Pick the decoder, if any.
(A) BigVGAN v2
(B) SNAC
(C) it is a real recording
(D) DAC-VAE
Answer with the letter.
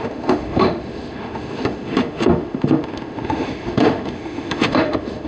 D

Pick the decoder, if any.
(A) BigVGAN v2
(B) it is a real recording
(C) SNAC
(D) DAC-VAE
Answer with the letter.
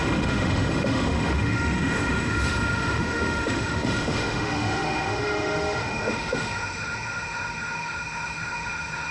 D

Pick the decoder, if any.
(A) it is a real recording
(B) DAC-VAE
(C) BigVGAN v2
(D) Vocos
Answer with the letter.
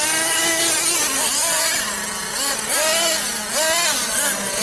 A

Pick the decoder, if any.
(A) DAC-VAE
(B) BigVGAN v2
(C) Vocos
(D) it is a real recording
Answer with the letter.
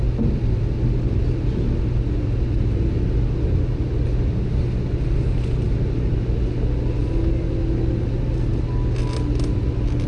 D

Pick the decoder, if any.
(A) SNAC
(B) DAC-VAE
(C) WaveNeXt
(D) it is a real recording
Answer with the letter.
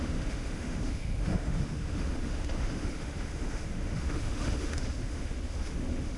B